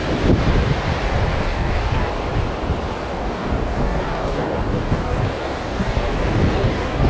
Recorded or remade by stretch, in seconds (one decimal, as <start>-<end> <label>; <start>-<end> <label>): 0.0-1.3 recorded; 1.3-2.1 remade; 2.1-3.0 recorded; 3.0-7.1 remade